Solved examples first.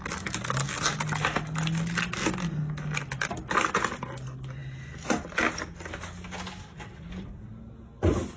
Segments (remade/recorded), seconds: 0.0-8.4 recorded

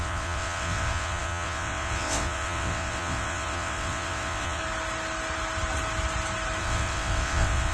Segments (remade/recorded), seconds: 0.0-4.6 remade; 4.6-6.6 recorded; 6.6-7.7 remade

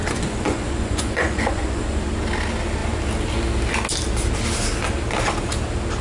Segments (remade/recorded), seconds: 0.0-2.0 remade; 2.0-6.0 recorded

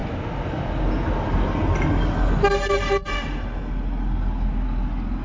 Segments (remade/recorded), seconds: 0.0-5.2 recorded

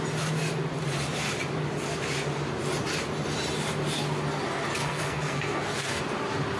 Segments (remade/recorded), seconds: 0.0-4.8 recorded; 4.8-6.0 remade; 6.0-6.6 recorded

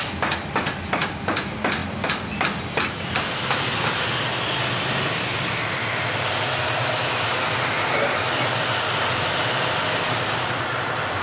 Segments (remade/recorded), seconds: 0.0-11.2 recorded

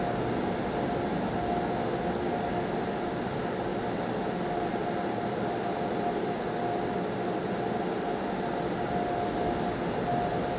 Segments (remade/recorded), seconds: 0.0-10.6 recorded